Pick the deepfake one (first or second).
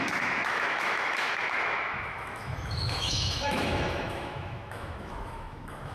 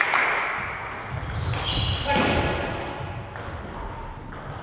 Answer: first